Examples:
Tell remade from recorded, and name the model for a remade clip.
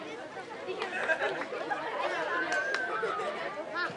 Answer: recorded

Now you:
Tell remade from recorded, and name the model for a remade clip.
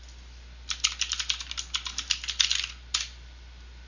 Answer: recorded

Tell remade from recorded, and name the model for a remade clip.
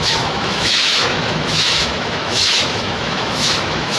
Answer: remade, autoencoder, DAC-VAE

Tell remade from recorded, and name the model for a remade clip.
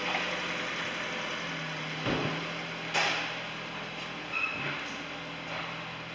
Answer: recorded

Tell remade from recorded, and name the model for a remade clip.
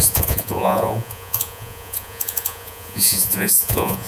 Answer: remade, vocoder, Vocos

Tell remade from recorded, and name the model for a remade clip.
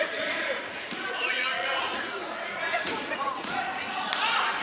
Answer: remade, vocoder, Vocos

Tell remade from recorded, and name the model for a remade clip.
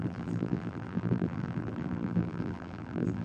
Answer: remade, vocoder, BigVGAN v2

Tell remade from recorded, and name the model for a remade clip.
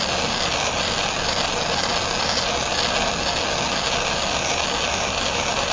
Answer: recorded